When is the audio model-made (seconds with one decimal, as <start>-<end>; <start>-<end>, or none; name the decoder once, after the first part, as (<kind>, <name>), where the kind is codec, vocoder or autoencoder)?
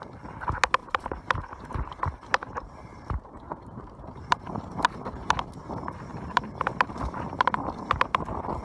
0.8-5.4 (vocoder, BigVGAN v2); 6.1-6.9